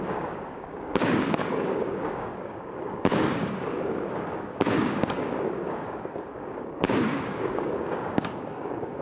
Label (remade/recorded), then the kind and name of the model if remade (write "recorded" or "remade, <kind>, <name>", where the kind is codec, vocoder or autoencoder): remade, codec, DAC